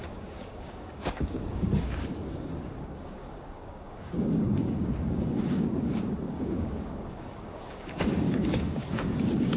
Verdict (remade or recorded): remade